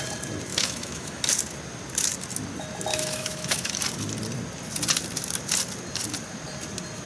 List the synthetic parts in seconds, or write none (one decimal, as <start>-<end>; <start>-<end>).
0.5-1.2; 2.9-3.8